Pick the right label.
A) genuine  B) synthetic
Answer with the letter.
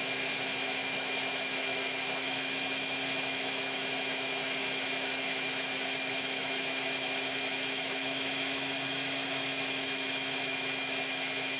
B